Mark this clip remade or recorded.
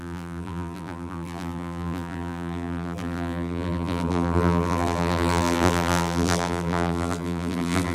remade